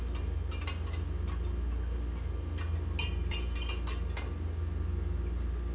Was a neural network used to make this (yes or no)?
no